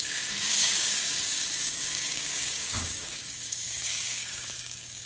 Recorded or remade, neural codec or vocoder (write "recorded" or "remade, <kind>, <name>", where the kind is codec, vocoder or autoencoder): remade, codec, DAC